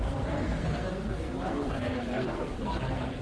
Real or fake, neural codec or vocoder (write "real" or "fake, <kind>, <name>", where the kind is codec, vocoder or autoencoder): fake, codec, SNAC